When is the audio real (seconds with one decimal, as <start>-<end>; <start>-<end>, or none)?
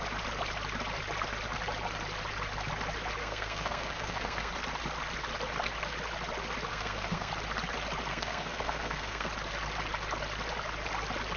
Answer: 0.0-3.2; 4.5-6.7; 7.3-8.1; 9.3-11.4